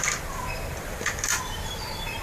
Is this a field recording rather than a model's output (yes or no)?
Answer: no